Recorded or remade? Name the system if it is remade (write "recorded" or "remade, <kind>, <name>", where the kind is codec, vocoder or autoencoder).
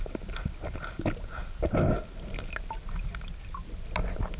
recorded